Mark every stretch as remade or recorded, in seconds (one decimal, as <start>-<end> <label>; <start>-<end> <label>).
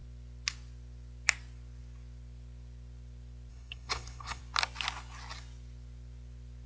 0.0-3.5 recorded; 3.5-4.4 remade; 4.4-6.7 recorded